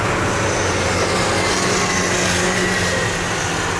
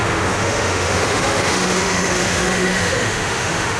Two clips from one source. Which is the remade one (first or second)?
second